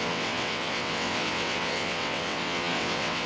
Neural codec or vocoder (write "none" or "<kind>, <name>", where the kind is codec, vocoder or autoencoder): vocoder, WaveNeXt